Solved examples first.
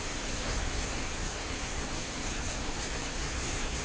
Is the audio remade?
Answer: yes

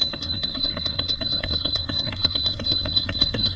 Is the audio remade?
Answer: yes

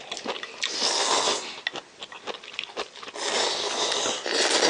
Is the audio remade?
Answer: no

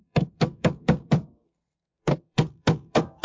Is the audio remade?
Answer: yes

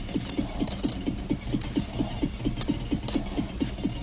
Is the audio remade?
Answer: no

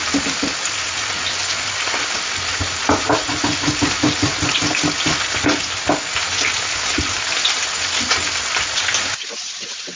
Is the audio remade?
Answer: no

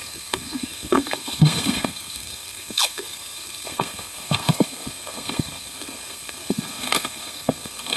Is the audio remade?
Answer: yes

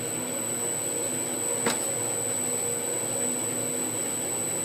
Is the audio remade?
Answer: no